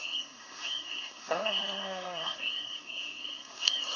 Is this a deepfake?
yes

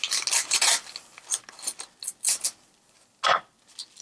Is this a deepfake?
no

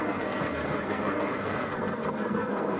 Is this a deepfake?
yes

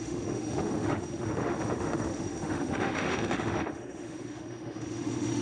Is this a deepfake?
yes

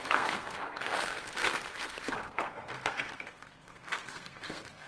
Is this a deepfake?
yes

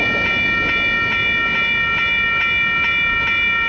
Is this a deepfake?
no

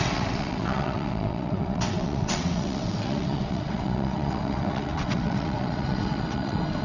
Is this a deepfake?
yes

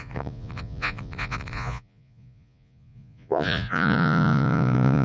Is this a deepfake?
yes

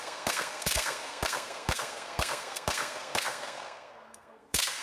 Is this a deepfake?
yes